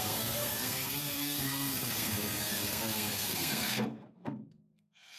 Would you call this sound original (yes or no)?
no